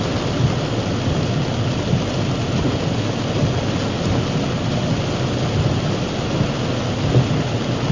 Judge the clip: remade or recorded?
recorded